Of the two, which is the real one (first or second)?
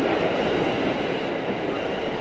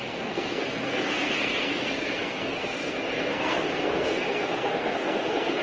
first